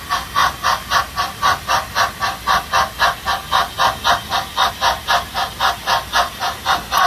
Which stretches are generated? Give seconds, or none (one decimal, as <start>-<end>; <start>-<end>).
none